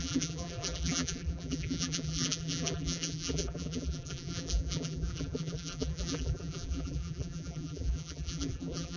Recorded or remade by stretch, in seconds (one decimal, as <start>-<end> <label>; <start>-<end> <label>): 0.0-9.0 remade